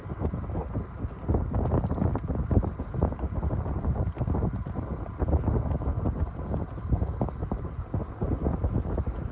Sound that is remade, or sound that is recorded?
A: recorded